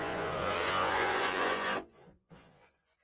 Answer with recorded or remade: remade